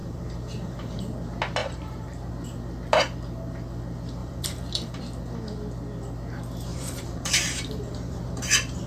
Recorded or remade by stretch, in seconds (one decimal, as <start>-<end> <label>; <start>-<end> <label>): 0.0-1.0 remade; 1.0-1.6 recorded; 1.6-2.3 remade; 2.3-4.2 recorded; 4.2-5.0 remade; 5.0-6.7 recorded; 6.7-8.9 remade